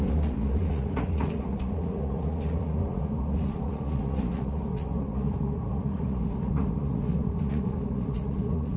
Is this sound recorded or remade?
remade